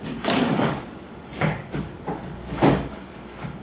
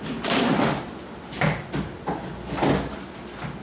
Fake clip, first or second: first